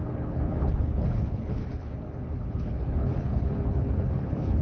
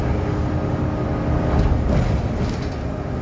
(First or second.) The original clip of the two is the second